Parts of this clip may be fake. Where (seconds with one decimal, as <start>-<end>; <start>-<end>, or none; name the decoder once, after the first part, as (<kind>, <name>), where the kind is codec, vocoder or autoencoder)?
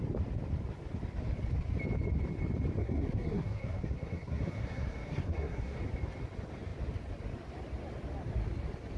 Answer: 2.8-5.8 (codec, SNAC)